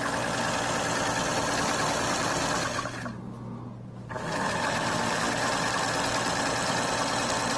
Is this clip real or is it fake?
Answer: real